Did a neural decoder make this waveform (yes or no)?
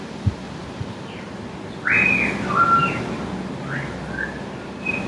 no